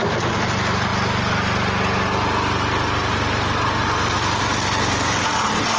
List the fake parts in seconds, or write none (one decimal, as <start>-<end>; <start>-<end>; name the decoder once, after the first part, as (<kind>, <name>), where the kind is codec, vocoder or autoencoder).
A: none

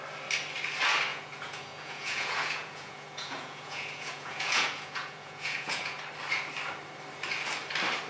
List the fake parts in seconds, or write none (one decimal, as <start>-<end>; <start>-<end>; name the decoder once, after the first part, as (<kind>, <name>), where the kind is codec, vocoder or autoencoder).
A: 1.1-6.0 (vocoder, Vocos)